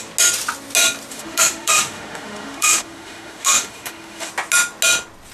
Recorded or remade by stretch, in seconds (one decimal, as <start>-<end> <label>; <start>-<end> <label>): 0.0-1.1 recorded; 1.1-4.3 remade; 4.3-5.3 recorded